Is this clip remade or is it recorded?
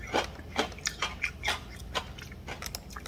recorded